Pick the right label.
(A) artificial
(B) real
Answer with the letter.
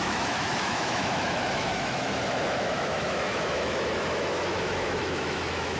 A